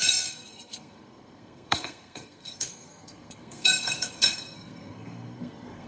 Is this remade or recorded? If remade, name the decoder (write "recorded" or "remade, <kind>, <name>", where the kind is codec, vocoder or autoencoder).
remade, codec, SNAC